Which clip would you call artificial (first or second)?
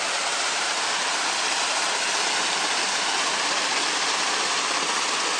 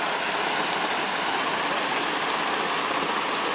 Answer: first